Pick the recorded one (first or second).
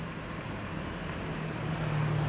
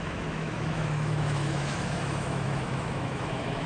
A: first